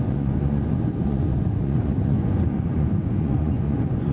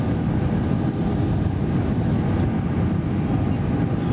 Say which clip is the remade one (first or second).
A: first